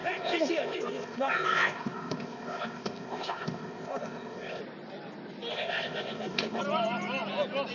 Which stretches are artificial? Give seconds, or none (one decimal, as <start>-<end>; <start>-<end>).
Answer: 0.0-4.6; 5.5-6.6